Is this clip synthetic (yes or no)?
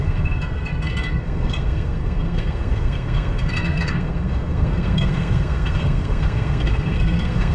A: yes